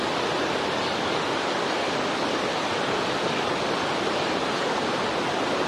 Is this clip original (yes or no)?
yes